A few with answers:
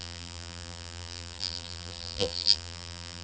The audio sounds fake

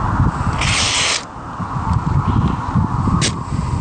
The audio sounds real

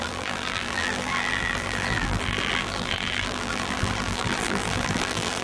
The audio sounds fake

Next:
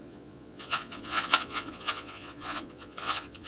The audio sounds fake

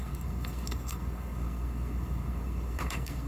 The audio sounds fake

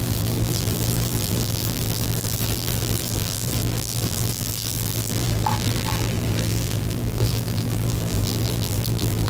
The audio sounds fake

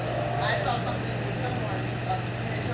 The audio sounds real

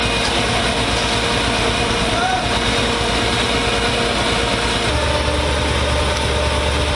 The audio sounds real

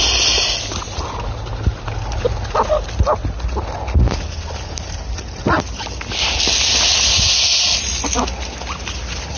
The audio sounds real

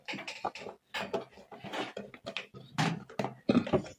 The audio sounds real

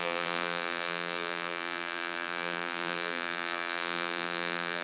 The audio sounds fake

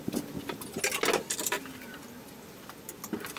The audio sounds real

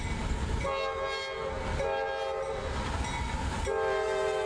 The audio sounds real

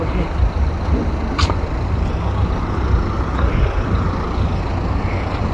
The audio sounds real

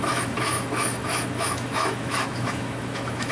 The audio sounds fake